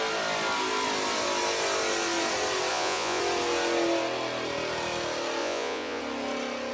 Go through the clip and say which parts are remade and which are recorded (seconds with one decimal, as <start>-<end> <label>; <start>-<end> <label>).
0.0-2.7 recorded; 2.7-3.2 remade; 3.2-5.4 recorded; 5.4-6.0 remade; 6.0-6.7 recorded